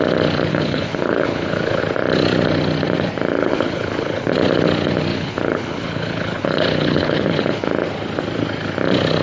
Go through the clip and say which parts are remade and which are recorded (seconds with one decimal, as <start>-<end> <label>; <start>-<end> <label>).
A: 0.0-0.5 recorded; 0.5-1.8 remade; 1.8-3.4 recorded; 3.4-4.3 remade; 4.3-5.1 recorded; 5.1-7.7 remade; 7.7-9.2 recorded